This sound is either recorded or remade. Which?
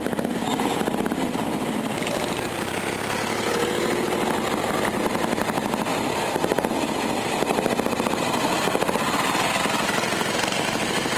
recorded